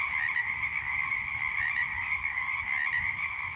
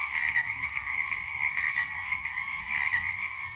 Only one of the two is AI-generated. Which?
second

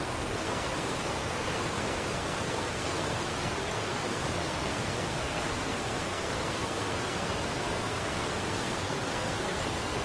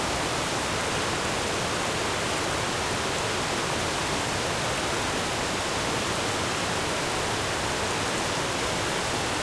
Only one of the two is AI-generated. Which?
first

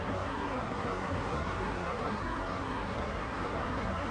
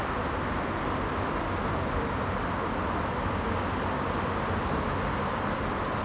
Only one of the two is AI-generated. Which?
first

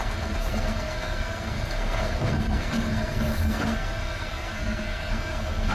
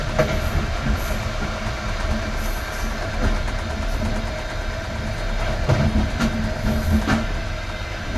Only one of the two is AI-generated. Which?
first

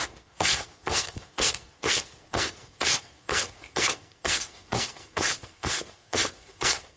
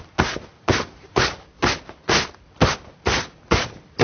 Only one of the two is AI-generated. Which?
first